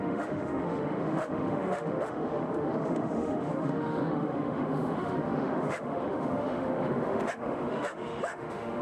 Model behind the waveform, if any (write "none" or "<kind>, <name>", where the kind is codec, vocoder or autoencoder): autoencoder, DAC-VAE